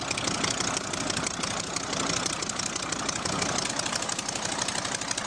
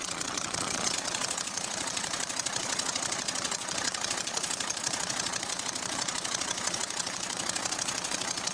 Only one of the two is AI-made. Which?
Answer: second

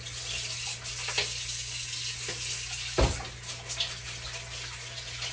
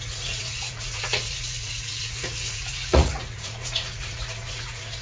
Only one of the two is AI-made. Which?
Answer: second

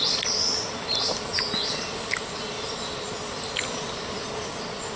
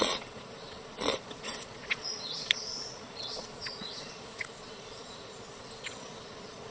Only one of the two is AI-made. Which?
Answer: second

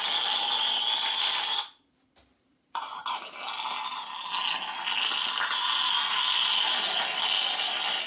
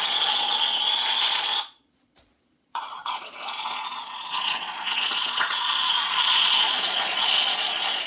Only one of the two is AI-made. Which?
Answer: second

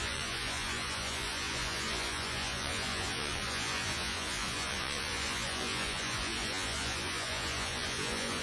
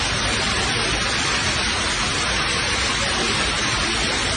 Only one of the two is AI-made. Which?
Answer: first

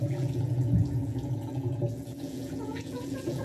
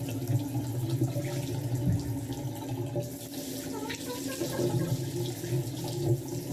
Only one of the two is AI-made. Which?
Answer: first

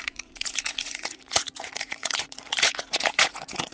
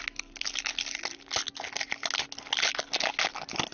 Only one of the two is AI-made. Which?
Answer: first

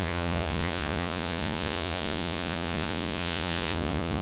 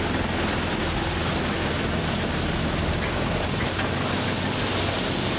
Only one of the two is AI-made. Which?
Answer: first